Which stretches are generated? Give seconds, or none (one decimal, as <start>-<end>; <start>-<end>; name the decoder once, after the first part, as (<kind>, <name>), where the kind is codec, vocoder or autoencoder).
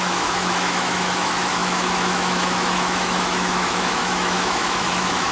0.0-5.3 (autoencoder, DAC-VAE)